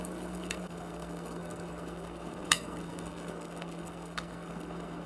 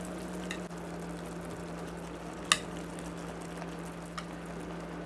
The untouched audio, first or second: second